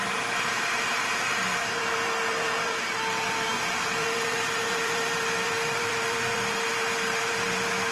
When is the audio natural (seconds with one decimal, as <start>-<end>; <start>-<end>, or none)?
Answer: none